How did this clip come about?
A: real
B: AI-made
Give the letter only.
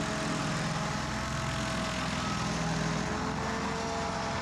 A